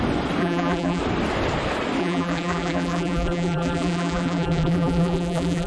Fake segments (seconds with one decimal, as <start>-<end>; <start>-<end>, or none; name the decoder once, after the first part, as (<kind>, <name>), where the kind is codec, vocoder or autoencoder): 0.4-1.0 (vocoder, BigVGAN v2); 2.0-5.7